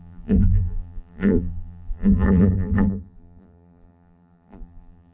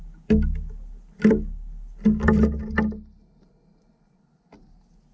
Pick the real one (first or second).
second